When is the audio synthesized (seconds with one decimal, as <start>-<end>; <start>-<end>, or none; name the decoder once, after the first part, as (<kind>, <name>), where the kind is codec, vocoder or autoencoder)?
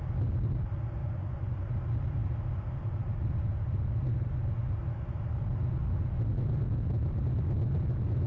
1.0-1.5 (vocoder, Vocos)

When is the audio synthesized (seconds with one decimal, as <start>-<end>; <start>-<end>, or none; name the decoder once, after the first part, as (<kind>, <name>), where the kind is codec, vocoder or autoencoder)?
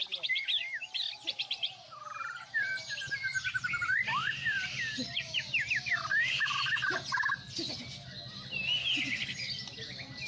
none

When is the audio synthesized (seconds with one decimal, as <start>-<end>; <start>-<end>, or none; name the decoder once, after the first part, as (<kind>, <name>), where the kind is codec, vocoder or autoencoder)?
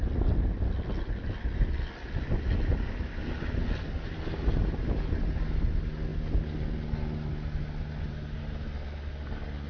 none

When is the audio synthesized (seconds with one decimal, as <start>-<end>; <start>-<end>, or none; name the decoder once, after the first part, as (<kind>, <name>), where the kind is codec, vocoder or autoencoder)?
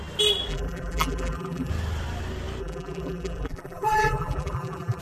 0.5-1.7 (vocoder, BigVGAN v2); 2.6-5.0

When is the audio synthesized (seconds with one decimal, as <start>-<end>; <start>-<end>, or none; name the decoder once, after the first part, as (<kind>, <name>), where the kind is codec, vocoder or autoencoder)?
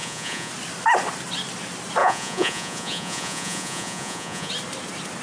0.0-0.5 (vocoder, Vocos); 2.0-4.5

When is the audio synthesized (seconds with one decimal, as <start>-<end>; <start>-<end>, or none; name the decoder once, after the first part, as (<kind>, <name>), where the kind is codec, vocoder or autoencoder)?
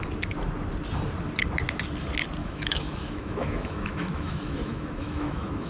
2.4-5.7 (autoencoder, DAC-VAE)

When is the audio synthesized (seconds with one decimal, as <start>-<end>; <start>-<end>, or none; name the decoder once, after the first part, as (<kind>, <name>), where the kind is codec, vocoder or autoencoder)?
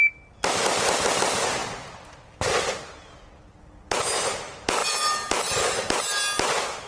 none